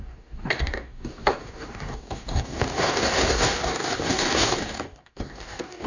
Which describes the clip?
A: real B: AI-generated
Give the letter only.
B